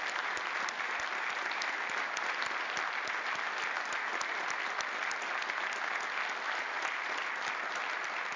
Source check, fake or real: real